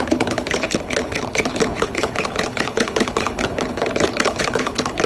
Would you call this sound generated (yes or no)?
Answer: yes